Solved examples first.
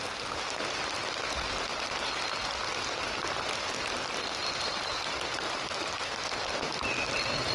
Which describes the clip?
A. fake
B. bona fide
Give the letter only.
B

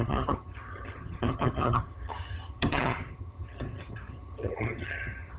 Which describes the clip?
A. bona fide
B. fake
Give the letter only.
B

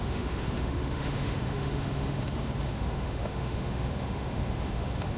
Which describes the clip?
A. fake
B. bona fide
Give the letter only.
A